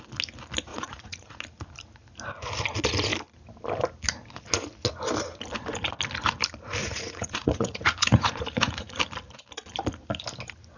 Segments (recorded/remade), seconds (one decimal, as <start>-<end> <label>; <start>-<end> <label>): 0.0-0.7 recorded; 0.7-1.4 remade; 1.4-6.8 recorded; 6.8-9.0 remade; 9.0-10.8 recorded